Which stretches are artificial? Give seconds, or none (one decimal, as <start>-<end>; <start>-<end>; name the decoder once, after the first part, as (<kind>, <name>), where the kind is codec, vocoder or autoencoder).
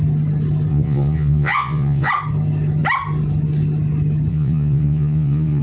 0.7-2.1 (vocoder, Vocos); 4.3-5.6